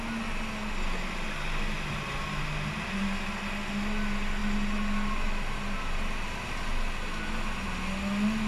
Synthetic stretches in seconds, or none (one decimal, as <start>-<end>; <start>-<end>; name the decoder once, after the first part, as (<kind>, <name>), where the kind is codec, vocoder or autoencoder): none